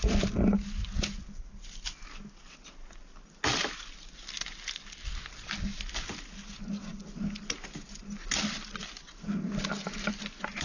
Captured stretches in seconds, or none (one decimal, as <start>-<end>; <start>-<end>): 0.0-10.6